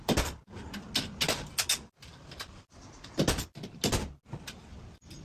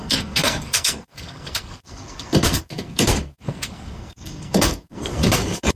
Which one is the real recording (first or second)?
first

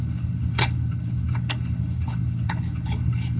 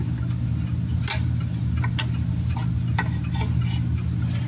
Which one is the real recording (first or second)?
second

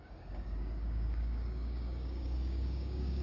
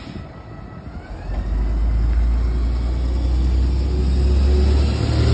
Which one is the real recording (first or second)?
second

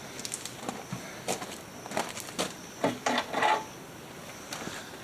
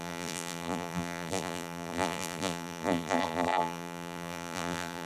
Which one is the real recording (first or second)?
first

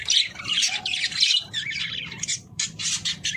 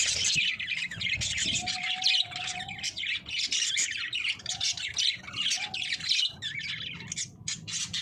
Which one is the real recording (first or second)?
second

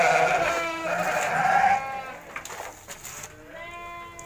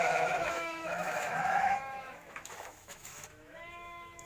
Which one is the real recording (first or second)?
first